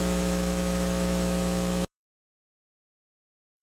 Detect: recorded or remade remade